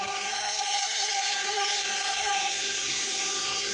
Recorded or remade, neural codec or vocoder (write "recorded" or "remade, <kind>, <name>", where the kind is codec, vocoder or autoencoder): remade, codec, SNAC